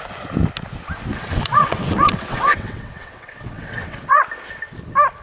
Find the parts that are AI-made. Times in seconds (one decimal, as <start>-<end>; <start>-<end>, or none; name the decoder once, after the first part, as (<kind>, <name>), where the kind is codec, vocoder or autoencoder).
1.1-4.2 (vocoder, WaveNeXt)